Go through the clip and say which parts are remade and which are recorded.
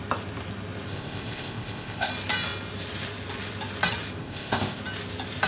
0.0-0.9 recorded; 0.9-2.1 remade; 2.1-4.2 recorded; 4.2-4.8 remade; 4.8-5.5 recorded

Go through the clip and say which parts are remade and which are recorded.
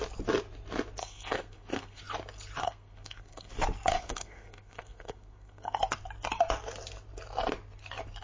0.0-1.0 recorded; 1.0-2.0 remade; 2.0-2.6 recorded; 2.6-3.5 remade; 3.5-3.9 recorded; 3.9-5.8 remade; 5.8-8.2 recorded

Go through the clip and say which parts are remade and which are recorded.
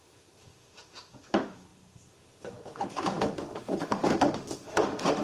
0.0-5.2 remade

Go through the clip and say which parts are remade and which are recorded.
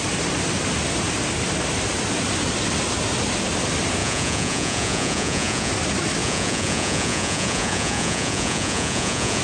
0.0-4.0 recorded; 4.0-5.7 remade; 5.7-6.2 recorded; 6.2-9.4 remade